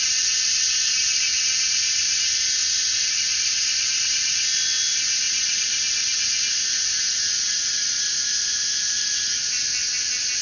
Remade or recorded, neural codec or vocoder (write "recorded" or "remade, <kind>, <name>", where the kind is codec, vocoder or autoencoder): recorded